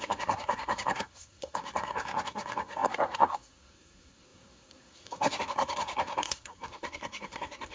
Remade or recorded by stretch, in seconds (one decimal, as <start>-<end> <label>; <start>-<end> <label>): 0.0-7.7 remade